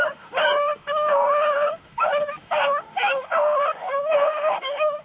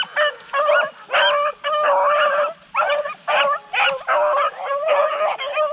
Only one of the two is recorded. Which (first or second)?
second